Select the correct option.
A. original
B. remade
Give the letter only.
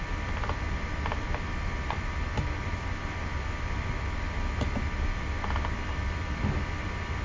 A